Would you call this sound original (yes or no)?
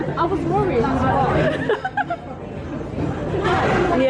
yes